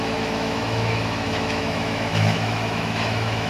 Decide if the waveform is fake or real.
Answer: fake